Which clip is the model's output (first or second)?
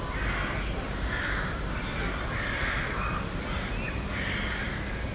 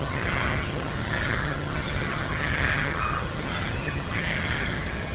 second